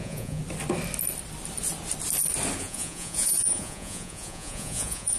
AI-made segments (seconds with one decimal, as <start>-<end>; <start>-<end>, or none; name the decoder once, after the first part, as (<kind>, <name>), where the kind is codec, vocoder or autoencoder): 0.0-0.4 (vocoder, Vocos); 2.6-5.2